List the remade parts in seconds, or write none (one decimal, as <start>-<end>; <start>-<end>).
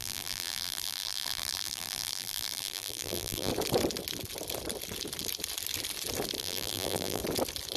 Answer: 0.0-3.5; 6.4-7.2